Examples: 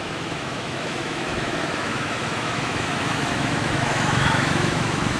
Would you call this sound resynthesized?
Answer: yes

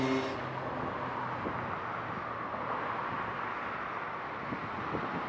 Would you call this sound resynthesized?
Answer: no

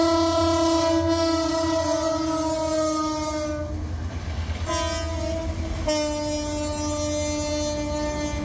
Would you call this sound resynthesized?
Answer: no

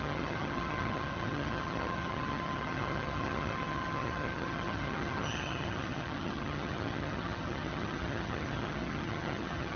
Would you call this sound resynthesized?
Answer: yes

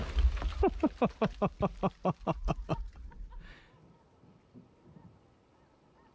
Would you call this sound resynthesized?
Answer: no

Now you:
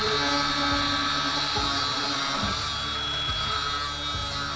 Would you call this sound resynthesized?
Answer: no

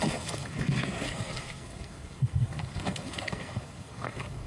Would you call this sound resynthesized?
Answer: yes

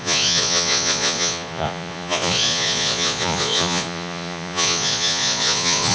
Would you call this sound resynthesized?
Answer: yes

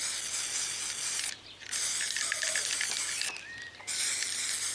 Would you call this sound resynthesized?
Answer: no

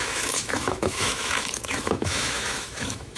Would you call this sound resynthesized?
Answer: yes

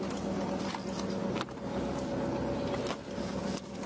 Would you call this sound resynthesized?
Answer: no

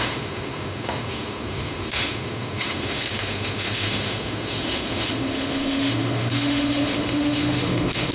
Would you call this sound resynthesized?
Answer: yes